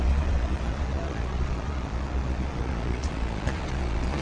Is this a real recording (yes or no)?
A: no